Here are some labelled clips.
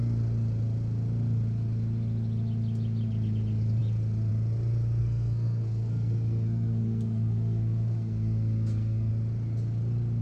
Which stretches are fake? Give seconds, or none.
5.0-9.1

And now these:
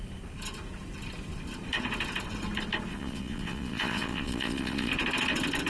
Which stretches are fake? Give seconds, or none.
2.9-4.9

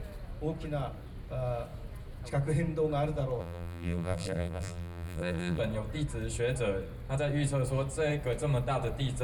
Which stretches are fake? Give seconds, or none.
3.4-5.6

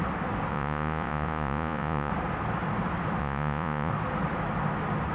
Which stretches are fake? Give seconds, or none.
0.5-2.1; 3.2-3.9

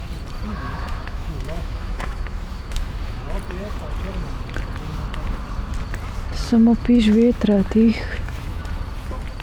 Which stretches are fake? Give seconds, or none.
0.5-3.2; 7.9-8.6

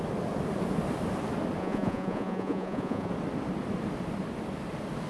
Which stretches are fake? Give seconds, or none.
1.6-3.1

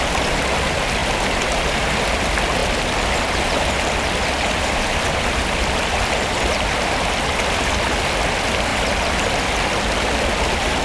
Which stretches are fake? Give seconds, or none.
none